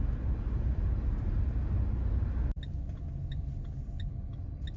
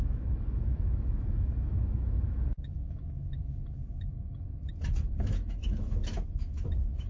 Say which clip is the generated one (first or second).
second